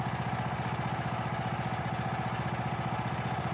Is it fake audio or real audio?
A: real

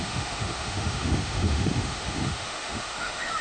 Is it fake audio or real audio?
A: fake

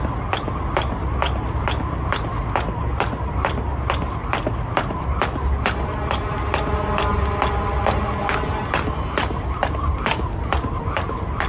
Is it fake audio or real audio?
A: real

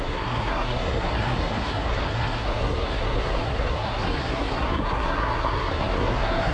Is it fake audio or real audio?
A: fake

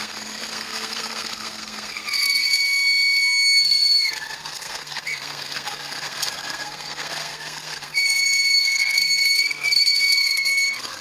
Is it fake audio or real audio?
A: fake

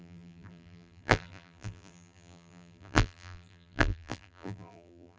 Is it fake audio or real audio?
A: fake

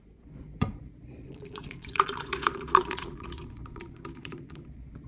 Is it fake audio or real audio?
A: fake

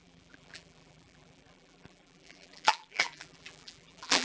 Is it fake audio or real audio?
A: fake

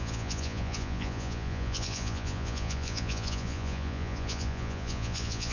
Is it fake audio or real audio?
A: fake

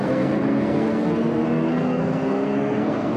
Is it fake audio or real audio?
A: fake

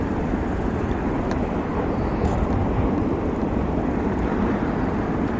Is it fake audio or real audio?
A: fake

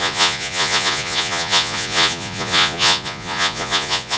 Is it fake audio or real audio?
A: fake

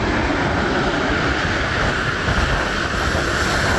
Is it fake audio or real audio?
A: real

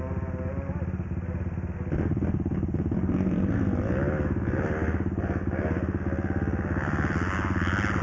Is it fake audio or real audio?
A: real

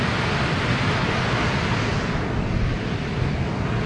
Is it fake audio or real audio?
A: real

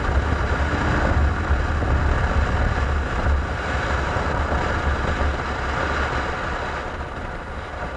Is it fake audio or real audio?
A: real